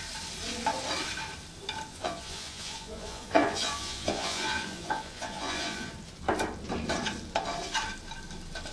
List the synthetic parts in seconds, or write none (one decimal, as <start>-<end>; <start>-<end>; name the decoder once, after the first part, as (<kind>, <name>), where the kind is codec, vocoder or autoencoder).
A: 1.9-5.9 (vocoder, Vocos)